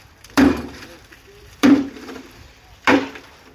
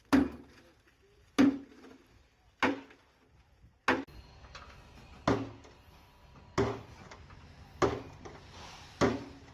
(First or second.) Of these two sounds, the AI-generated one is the first